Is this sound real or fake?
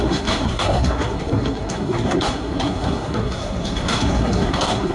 fake